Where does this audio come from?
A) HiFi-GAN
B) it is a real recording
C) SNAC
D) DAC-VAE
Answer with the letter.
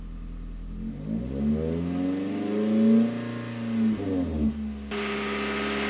B